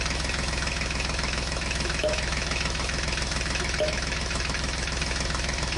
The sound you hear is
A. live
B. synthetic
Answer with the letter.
B